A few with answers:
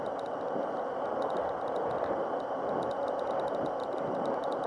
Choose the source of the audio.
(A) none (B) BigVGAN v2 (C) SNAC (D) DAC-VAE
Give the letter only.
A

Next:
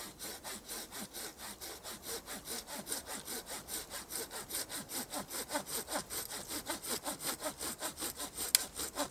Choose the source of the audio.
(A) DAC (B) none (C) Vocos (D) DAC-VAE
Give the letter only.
B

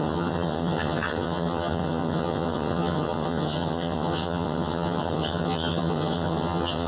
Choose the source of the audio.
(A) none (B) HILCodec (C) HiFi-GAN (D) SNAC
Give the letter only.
C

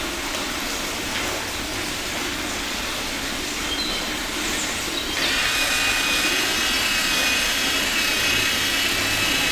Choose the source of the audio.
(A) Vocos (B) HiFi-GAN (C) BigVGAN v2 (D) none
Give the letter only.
D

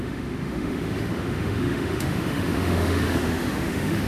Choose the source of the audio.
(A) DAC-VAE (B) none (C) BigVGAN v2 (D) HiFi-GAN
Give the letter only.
A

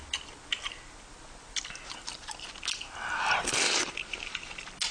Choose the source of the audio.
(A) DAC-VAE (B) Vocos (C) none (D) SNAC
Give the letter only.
C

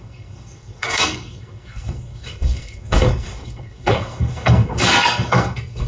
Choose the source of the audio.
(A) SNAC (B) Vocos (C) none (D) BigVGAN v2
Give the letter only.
A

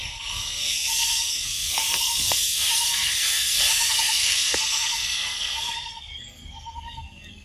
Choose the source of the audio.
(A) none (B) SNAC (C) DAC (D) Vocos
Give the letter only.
B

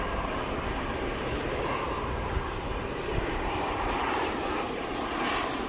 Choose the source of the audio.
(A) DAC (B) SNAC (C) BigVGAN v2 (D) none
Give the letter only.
C